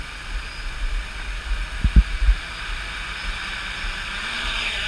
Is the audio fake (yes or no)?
no